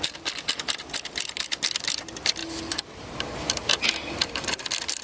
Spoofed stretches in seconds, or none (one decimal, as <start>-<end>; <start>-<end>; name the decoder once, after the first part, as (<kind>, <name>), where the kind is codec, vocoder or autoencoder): none